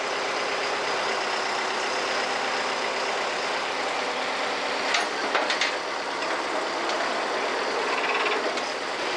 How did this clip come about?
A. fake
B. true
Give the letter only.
B